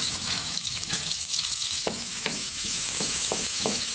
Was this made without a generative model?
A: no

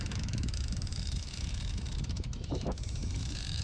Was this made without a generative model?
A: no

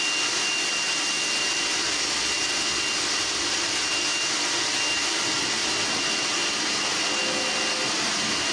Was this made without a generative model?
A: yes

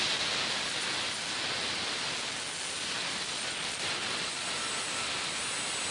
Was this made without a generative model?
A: yes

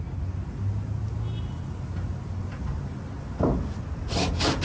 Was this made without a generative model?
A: yes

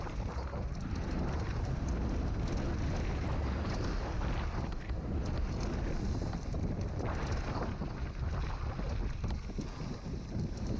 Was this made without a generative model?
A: yes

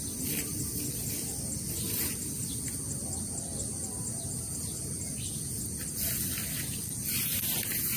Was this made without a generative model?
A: yes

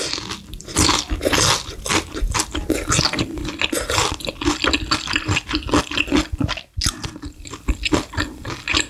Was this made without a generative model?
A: yes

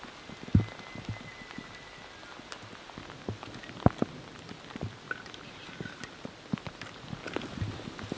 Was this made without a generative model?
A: yes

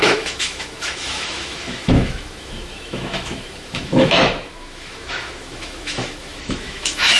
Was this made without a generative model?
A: no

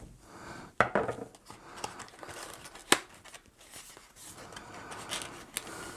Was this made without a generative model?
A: yes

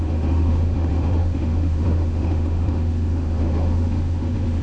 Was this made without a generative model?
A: no